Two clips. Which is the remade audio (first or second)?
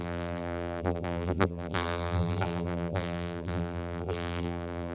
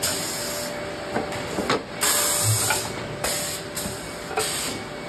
first